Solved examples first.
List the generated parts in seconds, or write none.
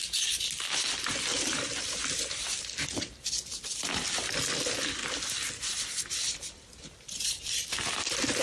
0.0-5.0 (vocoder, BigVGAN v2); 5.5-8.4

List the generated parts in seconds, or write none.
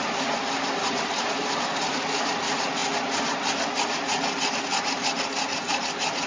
none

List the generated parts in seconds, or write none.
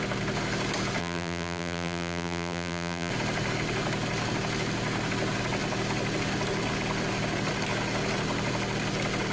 1.0-3.1 (vocoder, BigVGAN v2)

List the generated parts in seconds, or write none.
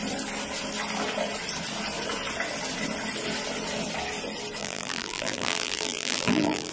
4.6-6.7 (vocoder, BigVGAN v2)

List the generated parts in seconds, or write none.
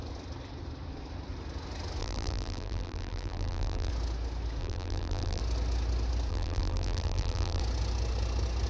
2.0-3.9 (vocoder, BigVGAN v2); 4.6-5.4; 6.3-7.6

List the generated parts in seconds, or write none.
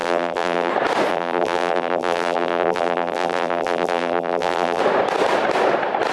0.0-0.7 (vocoder, BigVGAN v2); 1.1-4.8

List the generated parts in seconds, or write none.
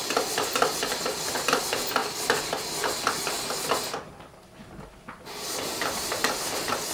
5.7-6.2 (vocoder, BigVGAN v2)